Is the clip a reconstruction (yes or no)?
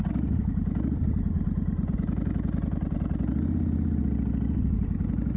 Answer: no